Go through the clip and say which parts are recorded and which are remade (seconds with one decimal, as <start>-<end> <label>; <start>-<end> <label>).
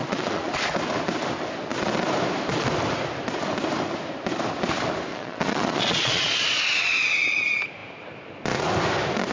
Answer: 0.0-0.5 remade; 0.5-5.1 recorded; 5.1-6.6 remade; 6.6-9.3 recorded